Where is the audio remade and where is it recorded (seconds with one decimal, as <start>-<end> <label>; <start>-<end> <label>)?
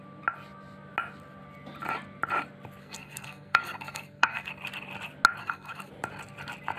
0.0-2.8 recorded; 2.8-4.5 remade; 4.5-5.4 recorded; 5.4-5.9 remade; 5.9-6.8 recorded